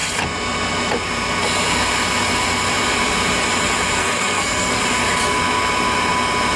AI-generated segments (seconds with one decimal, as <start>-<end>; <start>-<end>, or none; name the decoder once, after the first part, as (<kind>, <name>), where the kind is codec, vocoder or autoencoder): 4.0-4.8 (codec, SNAC)